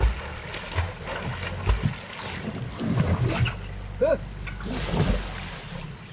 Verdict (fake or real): real